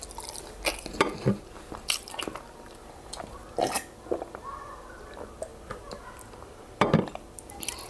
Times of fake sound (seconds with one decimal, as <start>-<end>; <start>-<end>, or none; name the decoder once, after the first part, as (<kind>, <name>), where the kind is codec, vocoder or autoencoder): 0.0-7.9 (vocoder, BigVGAN v2)